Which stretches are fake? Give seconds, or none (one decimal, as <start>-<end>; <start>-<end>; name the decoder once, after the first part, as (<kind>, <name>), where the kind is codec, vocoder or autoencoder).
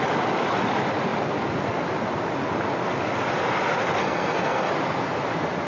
4.0-4.7 (codec, SNAC)